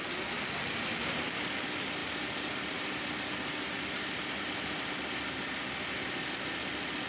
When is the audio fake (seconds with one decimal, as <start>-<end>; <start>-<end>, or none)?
none